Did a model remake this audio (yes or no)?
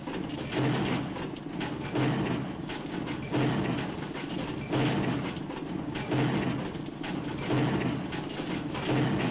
no